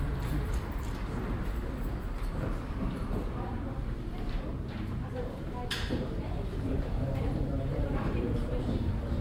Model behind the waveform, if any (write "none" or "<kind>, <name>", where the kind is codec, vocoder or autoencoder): vocoder, BigVGAN v2